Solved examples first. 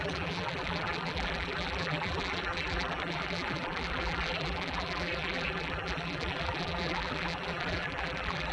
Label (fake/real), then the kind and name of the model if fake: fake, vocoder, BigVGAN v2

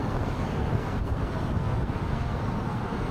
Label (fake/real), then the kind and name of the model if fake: fake, codec, SNAC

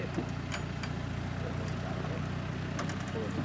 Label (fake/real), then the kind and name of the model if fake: real